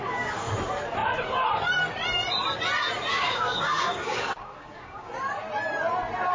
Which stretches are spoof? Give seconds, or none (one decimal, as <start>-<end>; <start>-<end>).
0.0-0.5; 3.1-5.1